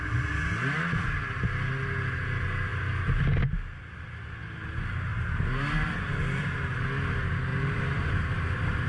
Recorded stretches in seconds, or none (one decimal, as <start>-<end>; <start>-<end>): 0.0-7.5; 8.1-8.9

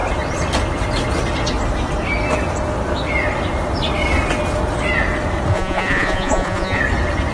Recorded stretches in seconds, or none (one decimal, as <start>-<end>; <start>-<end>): 0.0-5.5; 6.8-7.3

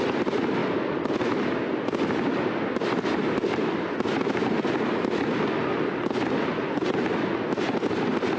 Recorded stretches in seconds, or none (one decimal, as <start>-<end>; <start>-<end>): 0.0-8.4